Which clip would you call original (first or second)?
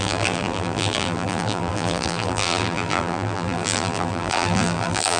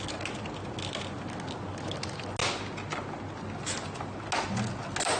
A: second